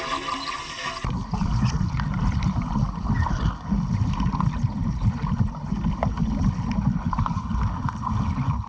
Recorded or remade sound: recorded